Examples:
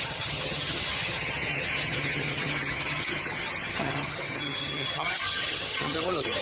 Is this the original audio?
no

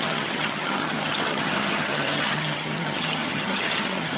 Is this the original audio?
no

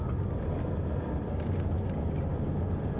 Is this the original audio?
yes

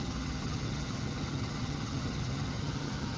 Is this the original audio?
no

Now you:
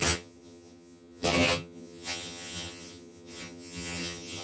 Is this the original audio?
no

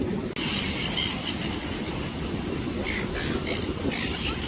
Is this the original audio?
yes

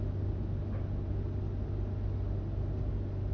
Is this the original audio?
yes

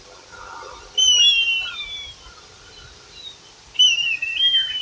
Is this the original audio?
yes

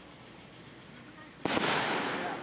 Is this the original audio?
yes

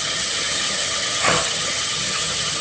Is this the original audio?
no